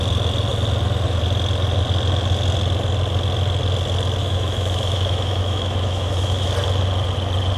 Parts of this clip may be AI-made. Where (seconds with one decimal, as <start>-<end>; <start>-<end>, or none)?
4.2-6.5